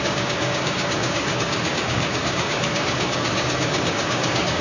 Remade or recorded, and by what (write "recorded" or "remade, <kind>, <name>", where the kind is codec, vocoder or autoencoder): remade, codec, DAC